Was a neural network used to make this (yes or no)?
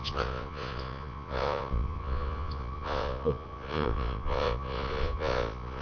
yes